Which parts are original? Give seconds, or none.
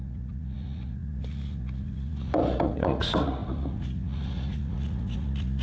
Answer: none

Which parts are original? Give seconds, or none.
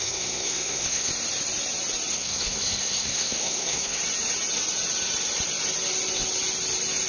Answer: 1.1-2.1; 4.0-7.1